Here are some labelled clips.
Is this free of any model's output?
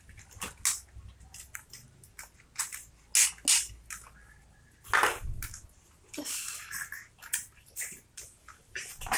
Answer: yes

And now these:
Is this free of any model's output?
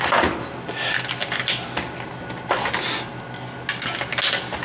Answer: yes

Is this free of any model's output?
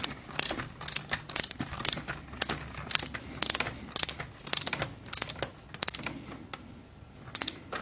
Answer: yes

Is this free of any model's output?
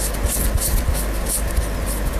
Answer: yes